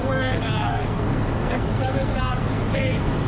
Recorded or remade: remade